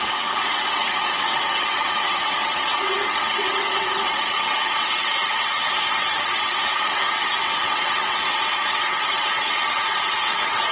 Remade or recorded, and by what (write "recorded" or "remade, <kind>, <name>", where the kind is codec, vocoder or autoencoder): remade, vocoder, WaveNeXt